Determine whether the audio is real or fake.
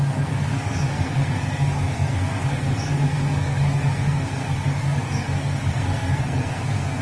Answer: fake